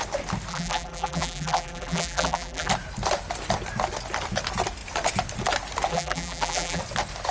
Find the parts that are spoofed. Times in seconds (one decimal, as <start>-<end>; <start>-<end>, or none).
0.5-2.7; 5.9-6.8